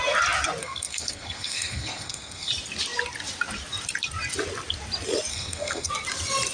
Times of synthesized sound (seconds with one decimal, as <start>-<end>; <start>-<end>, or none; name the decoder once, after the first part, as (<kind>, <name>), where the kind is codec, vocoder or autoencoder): 0.6-2.5 (codec, SNAC); 5.3-5.9